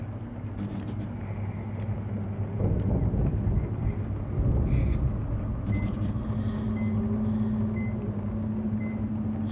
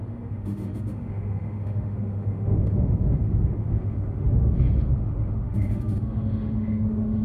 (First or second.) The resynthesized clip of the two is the second